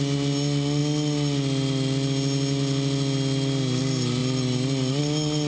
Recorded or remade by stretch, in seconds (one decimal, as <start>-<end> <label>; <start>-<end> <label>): 0.0-4.2 recorded; 4.2-5.0 remade; 5.0-5.5 recorded